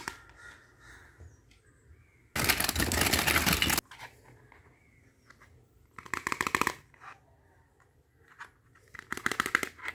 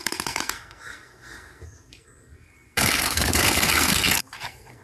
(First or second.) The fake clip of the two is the second